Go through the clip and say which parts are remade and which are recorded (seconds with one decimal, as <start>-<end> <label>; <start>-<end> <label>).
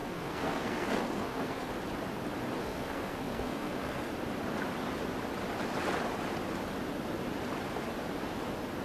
0.0-1.7 remade; 1.7-2.6 recorded; 2.6-4.1 remade; 4.1-8.8 recorded